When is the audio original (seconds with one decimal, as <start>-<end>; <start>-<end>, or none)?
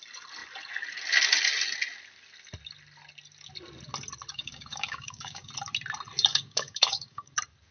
0.0-4.3; 5.5-6.3; 7.3-7.7